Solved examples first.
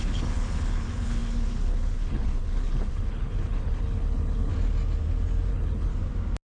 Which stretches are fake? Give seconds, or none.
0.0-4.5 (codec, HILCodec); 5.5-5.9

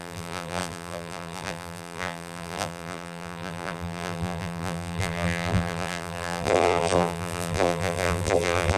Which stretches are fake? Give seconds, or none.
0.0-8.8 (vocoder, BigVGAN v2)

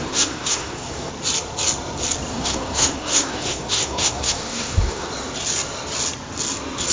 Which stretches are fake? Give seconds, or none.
0.0-1.1 (codec, SNAC); 2.3-5.1